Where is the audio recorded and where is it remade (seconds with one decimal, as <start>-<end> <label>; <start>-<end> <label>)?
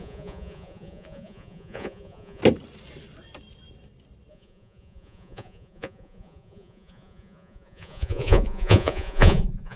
0.0-2.4 remade; 2.4-4.3 recorded; 4.3-9.8 remade